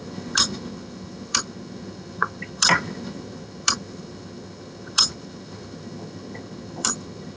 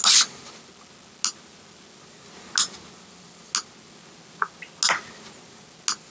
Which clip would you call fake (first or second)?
first